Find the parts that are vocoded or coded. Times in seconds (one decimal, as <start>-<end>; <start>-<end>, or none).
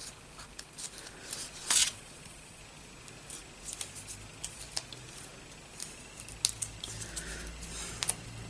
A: 1.8-2.6